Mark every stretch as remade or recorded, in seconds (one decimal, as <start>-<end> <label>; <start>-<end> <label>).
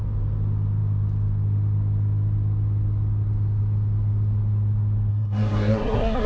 0.0-5.1 recorded; 5.1-6.3 remade